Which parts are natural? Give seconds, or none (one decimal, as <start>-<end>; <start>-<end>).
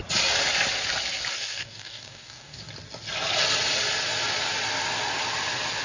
0.0-1.3; 2.6-5.8